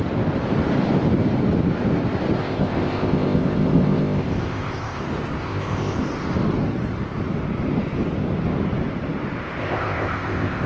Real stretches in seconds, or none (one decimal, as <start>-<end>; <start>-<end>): 0.0-2.4; 5.0-5.4; 6.0-9.6